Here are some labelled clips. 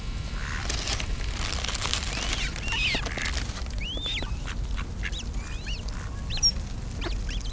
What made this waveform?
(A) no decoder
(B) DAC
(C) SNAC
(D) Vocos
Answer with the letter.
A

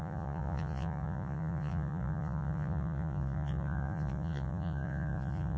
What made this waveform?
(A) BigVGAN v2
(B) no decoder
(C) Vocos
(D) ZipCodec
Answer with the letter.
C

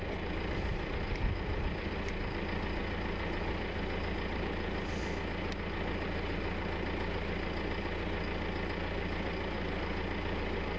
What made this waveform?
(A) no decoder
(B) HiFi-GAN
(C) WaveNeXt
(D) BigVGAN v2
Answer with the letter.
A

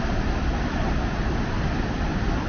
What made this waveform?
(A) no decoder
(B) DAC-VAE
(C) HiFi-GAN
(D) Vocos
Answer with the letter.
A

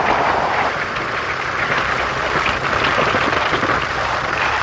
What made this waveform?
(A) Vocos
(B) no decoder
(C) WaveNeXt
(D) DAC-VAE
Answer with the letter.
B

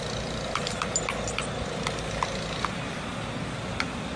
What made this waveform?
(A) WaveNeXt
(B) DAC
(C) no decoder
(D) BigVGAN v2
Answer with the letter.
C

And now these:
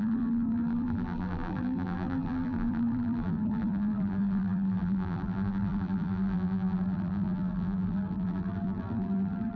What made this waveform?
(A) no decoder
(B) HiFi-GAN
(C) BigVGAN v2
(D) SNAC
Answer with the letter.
C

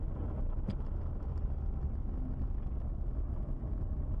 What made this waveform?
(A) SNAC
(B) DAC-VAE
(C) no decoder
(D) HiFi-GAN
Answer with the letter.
C